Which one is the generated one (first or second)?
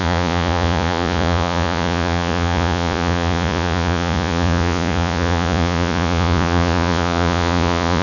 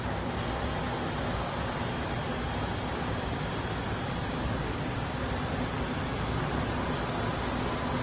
first